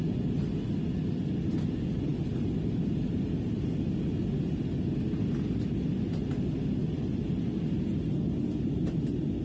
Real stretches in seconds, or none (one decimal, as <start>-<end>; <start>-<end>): 0.0-9.4

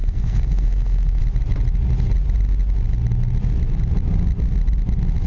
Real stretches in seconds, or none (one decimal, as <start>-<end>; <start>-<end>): 1.2-5.3

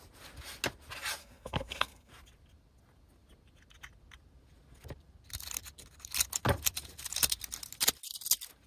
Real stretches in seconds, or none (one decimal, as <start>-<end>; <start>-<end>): 0.0-1.2; 2.1-8.7

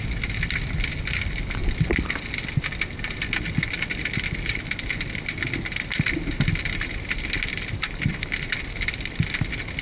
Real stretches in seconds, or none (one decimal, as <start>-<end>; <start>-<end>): 0.0-9.8

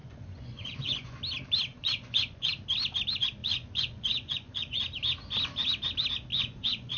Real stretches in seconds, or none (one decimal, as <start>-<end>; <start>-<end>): 1.2-1.7; 2.5-3.4; 4.8-6.3